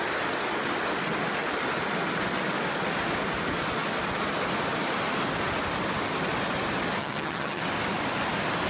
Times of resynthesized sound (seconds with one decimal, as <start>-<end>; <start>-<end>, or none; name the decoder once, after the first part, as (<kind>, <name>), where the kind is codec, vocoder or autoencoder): 7.0-7.6 (vocoder, HiFi-GAN)